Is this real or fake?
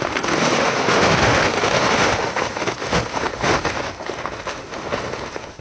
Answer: fake